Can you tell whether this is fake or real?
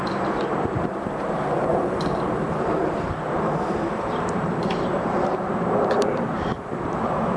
fake